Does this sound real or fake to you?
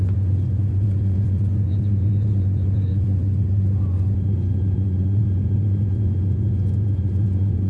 fake